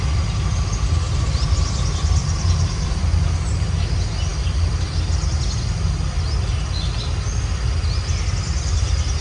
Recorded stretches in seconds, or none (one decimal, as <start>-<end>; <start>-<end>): 0.0-2.2; 3.0-9.2